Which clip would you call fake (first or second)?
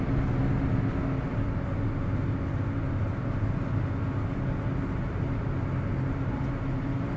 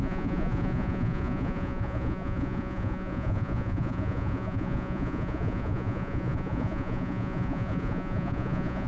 second